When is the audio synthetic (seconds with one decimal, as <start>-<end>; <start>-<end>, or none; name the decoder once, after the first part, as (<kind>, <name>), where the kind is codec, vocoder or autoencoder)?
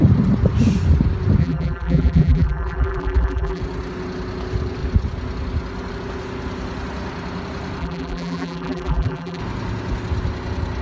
1.4-3.6 (vocoder, BigVGAN v2); 7.8-9.4